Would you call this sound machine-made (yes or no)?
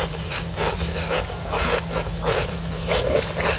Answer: no